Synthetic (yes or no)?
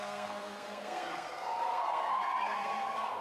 yes